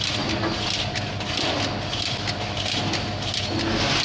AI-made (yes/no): no